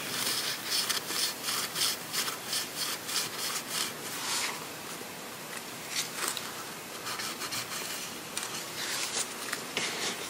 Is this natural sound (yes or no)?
no